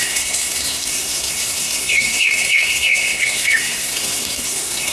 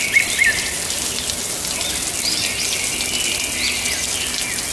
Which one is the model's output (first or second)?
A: first